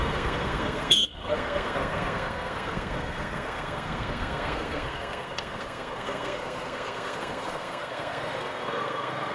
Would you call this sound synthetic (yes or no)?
yes